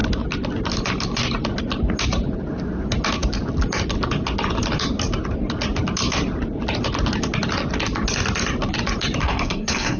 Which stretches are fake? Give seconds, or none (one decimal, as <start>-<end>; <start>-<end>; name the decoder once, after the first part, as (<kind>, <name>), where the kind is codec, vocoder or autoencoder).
9.2-10.0 (codec, SNAC)